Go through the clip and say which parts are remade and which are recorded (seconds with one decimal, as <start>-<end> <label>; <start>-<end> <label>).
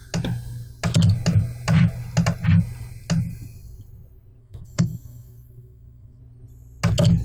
0.0-4.4 recorded; 4.4-6.2 remade; 6.2-7.2 recorded